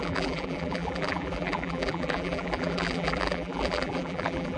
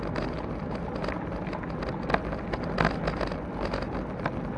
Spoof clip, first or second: first